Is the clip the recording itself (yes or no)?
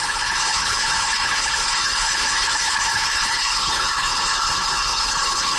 no